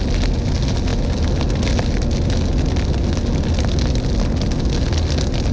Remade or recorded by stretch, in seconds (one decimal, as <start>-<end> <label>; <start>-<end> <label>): 0.0-5.5 recorded